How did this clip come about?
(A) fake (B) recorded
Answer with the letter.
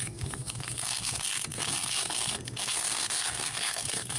A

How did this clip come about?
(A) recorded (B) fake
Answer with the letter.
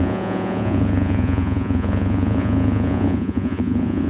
B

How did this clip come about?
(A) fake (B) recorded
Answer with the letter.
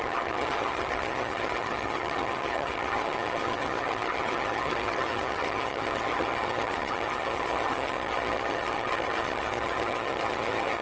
A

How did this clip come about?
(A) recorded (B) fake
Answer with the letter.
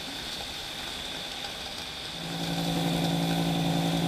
A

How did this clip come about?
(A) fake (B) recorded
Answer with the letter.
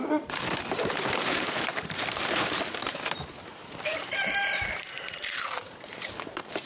A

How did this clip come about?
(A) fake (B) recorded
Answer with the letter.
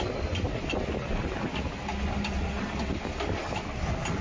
B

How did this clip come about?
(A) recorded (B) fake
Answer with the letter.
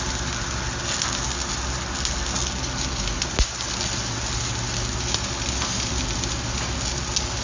A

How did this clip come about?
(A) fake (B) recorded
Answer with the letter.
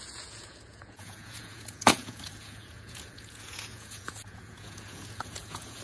A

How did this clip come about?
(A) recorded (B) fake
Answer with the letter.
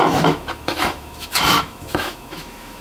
B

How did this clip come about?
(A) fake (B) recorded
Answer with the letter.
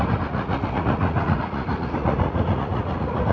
A